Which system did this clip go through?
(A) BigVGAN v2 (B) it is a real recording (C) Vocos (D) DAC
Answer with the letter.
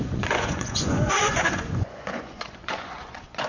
C